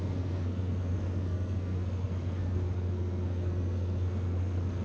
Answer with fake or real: fake